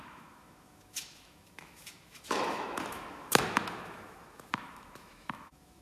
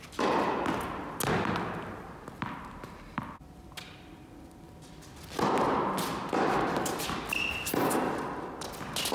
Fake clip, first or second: first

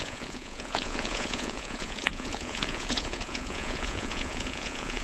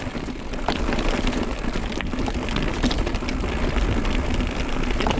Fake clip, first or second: first